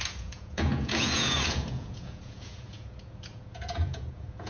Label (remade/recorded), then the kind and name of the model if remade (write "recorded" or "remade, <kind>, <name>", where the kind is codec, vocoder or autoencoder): remade, vocoder, Vocos